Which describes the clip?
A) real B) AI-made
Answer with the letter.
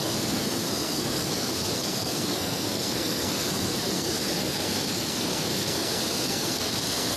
B